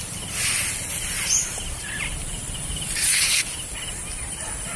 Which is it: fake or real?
real